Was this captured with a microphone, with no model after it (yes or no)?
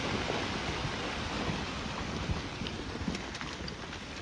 no